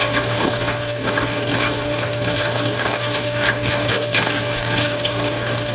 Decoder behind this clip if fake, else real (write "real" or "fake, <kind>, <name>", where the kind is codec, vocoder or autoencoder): fake, codec, DAC